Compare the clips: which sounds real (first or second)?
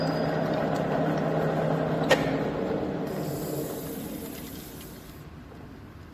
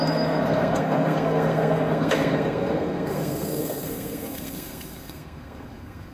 first